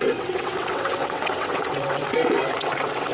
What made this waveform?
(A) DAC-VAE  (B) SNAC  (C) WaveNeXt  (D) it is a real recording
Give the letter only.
C